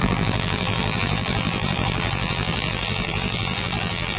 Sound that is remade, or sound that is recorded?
remade